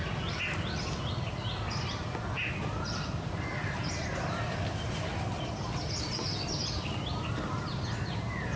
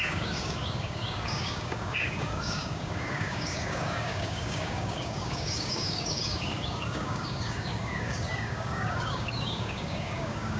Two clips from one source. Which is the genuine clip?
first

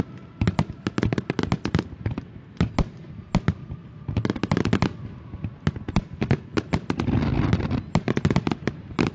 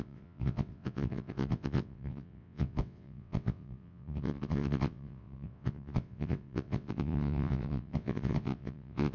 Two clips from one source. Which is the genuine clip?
first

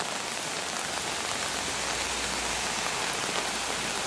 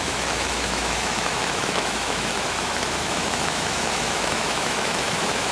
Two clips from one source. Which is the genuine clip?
first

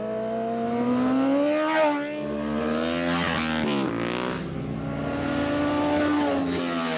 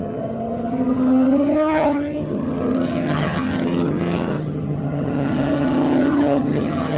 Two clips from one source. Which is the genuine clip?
first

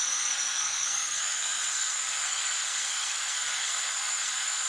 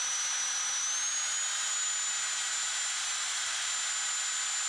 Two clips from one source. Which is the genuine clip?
second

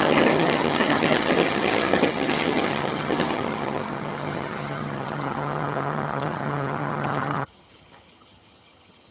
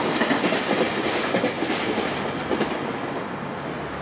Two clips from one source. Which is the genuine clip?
second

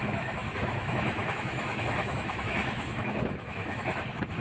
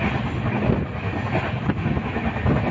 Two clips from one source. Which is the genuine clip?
second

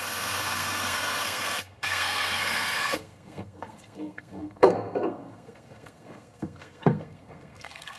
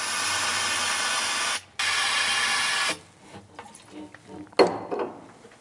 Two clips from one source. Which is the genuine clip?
second